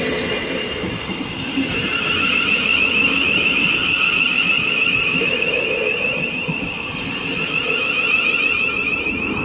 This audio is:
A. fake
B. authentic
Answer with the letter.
B